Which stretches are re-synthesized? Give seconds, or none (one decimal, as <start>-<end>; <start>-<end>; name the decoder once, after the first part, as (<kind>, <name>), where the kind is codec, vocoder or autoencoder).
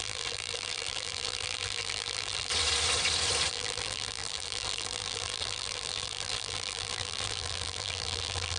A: 0.0-2.5 (vocoder, BigVGAN v2); 3.5-8.6